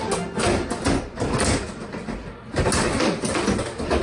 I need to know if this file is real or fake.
real